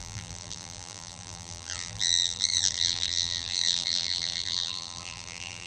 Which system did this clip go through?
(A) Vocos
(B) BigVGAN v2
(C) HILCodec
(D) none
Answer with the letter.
B